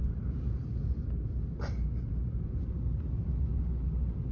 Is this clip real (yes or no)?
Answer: yes